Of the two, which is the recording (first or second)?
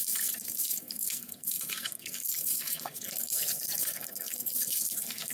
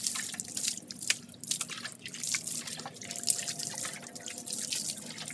second